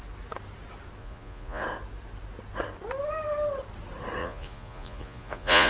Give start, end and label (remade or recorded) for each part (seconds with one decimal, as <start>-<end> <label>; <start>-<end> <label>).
0.0-1.0 recorded; 1.0-1.6 remade; 1.6-4.2 recorded; 4.2-5.7 remade